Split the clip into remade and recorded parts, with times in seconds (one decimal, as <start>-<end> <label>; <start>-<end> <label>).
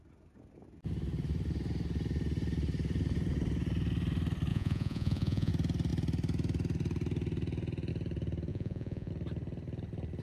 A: 0.0-4.5 recorded; 4.5-5.5 remade; 5.5-8.5 recorded; 8.5-9.1 remade; 9.1-10.2 recorded